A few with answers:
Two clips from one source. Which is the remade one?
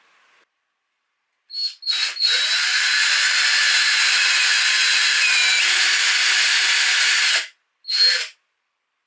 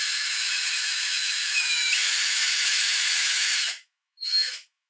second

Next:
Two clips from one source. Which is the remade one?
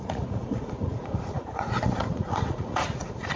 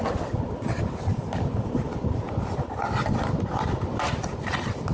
first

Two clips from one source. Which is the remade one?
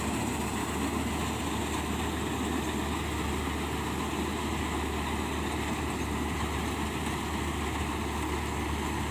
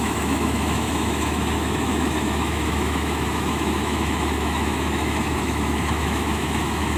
second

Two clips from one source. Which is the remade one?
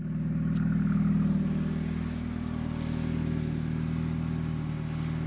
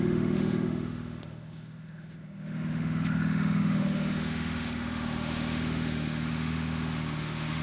second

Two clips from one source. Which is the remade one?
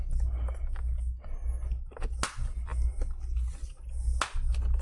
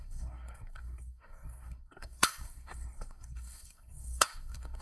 second